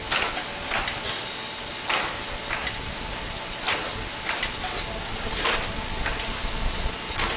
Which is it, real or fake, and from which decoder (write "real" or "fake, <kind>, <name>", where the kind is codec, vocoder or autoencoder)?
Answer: real